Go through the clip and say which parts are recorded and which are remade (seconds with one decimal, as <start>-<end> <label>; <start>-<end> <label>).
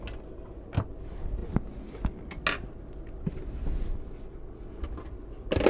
0.0-5.7 recorded